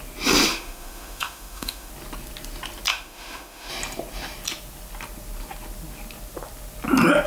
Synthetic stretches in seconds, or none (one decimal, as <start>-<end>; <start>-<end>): 0.5-1.9; 2.9-3.7